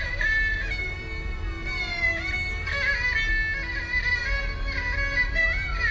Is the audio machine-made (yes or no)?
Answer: no